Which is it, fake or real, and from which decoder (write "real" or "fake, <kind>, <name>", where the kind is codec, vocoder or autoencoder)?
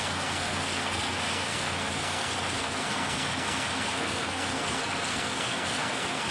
fake, codec, SNAC